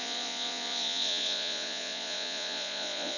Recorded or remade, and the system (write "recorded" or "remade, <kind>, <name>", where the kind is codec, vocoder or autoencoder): remade, vocoder, Vocos